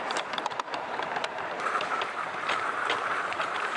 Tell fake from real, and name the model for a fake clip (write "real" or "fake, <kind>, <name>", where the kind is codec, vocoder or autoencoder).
fake, vocoder, BigVGAN v2